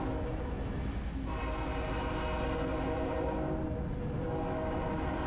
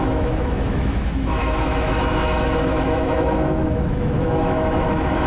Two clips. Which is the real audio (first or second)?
first